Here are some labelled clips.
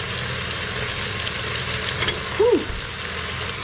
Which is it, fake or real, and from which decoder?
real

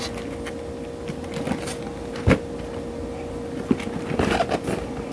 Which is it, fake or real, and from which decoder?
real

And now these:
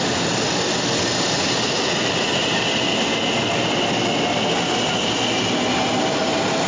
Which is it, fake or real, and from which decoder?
real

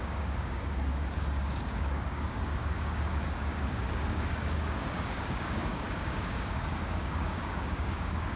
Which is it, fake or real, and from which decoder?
fake, codec, DAC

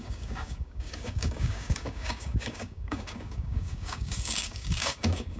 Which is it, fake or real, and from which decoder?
fake, codec, DAC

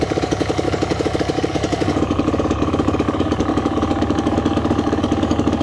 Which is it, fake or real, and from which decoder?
fake, codec, DAC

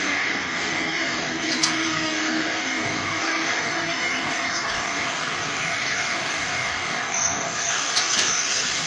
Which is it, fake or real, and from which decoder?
fake, codec, DAC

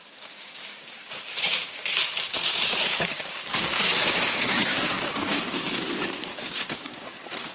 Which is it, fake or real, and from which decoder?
fake, codec, DAC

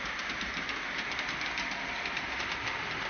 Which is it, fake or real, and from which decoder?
real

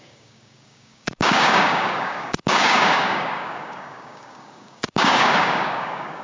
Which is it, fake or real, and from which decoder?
fake, codec, DAC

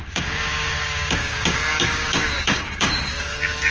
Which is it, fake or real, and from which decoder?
fake, codec, DAC